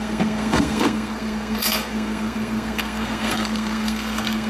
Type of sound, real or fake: fake